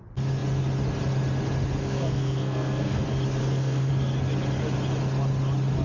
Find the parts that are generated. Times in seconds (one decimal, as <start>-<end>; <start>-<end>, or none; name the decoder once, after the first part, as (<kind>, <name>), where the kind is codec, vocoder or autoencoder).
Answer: 1.8-3.0 (codec, SNAC); 3.4-3.9